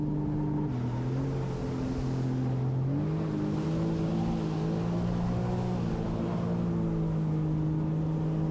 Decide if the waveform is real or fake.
real